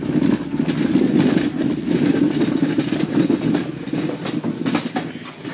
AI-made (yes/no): no